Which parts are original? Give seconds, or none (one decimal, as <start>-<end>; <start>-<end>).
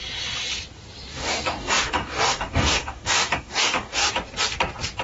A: 0.0-1.1; 4.1-5.0